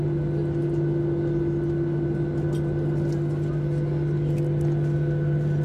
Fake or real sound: real